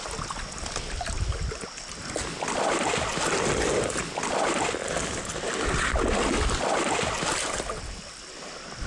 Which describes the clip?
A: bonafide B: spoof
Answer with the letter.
A